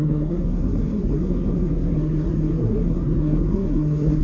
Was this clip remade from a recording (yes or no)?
yes